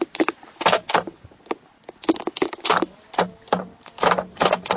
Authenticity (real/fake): real